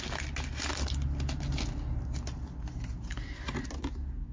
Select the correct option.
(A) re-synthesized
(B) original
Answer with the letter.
B